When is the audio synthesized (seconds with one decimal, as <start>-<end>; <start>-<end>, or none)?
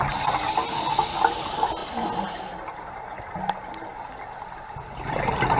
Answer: none